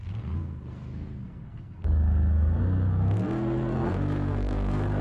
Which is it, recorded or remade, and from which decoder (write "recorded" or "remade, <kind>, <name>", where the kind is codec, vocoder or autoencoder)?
remade, codec, SNAC